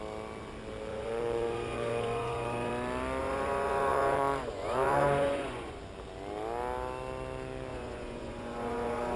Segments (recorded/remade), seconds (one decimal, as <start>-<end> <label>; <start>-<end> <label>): 0.0-0.9 recorded; 0.9-2.7 remade; 2.7-3.2 recorded; 3.2-5.8 remade; 5.8-7.7 recorded; 7.7-9.2 remade